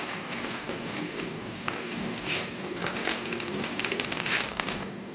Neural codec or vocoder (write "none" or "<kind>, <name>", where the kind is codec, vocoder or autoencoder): codec, DAC